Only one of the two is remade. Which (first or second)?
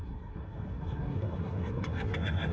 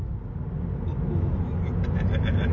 first